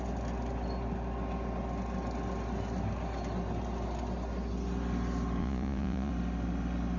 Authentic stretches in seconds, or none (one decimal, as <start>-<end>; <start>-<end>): 0.0-5.4; 6.1-7.0